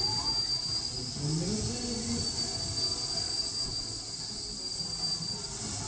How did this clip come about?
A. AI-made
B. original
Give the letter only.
B